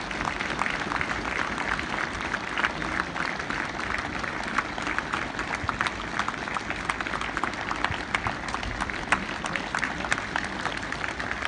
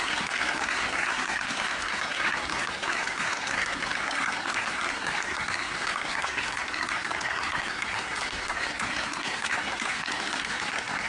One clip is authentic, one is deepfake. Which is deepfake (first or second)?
second